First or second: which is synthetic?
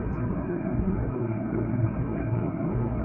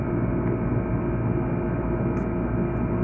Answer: first